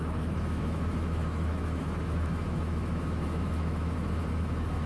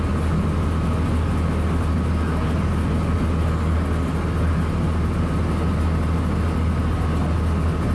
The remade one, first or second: first